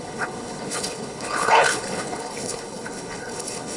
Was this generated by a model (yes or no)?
yes